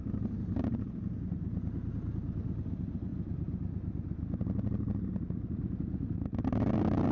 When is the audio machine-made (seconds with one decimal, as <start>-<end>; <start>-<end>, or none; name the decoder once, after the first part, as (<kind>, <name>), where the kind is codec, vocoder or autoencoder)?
none